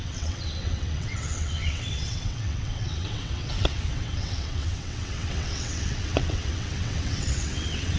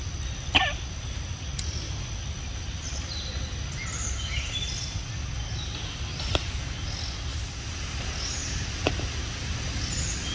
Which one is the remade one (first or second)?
first